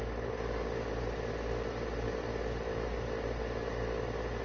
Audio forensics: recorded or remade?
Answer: recorded